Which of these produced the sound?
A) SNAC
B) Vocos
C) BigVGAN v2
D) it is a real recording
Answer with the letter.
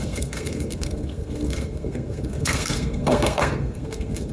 A